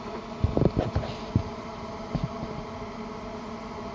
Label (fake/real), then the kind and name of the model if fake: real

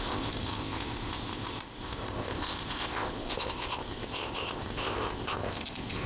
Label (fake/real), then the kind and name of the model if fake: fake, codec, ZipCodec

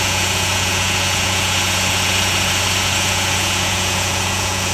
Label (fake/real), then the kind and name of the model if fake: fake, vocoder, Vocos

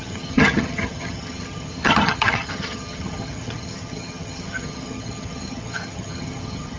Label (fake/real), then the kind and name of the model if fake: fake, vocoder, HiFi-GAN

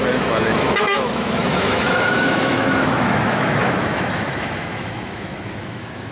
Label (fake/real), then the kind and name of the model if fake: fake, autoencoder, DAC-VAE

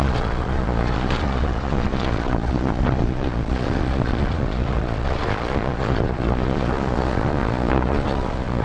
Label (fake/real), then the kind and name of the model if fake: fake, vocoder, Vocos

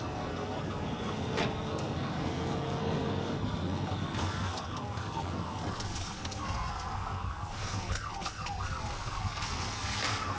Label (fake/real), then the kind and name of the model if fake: fake, codec, SNAC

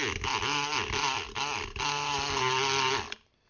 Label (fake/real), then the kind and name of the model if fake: real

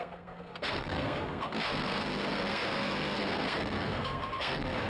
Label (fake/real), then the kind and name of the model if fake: fake, codec, SNAC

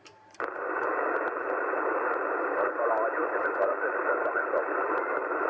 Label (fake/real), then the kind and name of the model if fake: fake, vocoder, BigVGAN v2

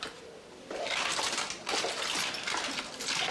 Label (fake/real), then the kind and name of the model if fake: real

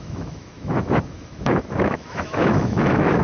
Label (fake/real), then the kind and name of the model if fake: fake, autoencoder, DAC-VAE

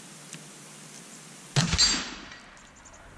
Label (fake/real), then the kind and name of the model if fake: real